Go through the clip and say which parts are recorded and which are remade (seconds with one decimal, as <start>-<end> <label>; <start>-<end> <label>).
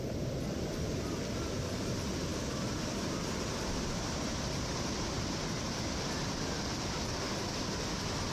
0.0-8.3 remade